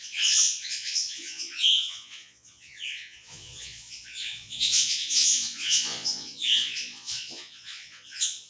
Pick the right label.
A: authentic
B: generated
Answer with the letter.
B